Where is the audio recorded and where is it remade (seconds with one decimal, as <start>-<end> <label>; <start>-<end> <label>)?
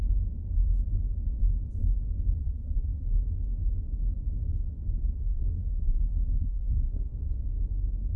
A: 0.0-2.4 recorded; 2.4-3.1 remade; 3.1-5.2 recorded; 5.2-7.1 remade; 7.1-8.2 recorded